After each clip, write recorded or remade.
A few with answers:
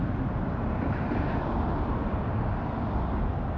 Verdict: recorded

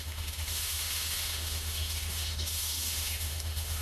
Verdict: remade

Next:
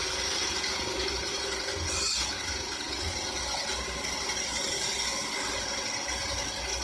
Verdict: recorded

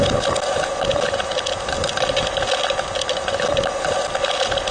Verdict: recorded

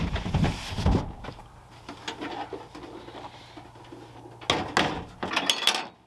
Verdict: recorded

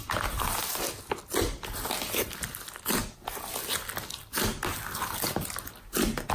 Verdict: recorded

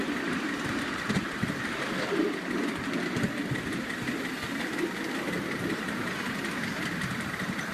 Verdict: recorded